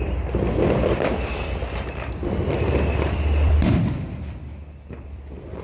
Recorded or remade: remade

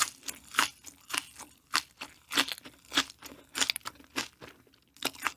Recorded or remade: recorded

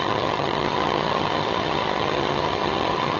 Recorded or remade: remade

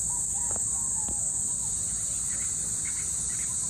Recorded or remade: recorded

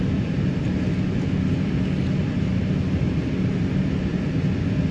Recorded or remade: recorded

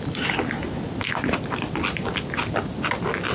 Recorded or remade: recorded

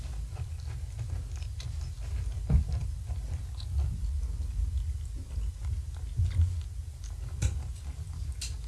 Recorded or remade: recorded